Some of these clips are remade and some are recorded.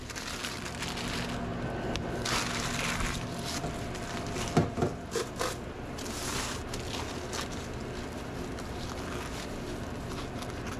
recorded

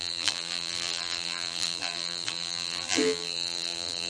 remade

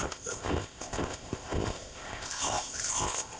remade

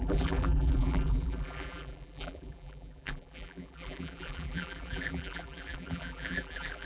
remade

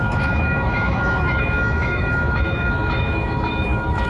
remade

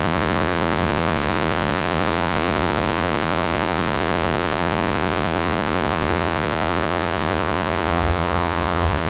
remade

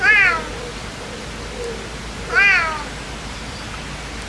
recorded